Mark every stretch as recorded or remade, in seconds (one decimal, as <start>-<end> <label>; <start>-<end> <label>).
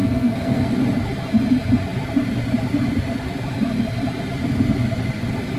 0.0-0.7 remade; 0.7-5.6 recorded